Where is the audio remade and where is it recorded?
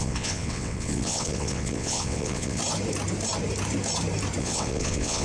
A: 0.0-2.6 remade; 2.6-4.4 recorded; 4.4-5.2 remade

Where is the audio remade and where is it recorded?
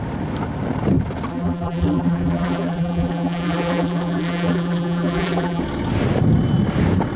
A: 0.0-1.3 recorded; 1.3-5.6 remade; 5.6-7.2 recorded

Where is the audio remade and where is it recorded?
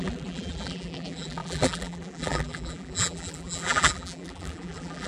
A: 0.0-5.1 remade